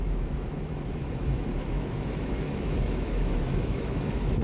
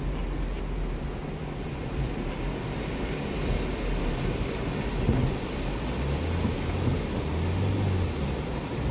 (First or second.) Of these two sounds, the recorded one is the second